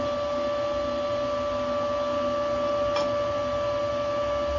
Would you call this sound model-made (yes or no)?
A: no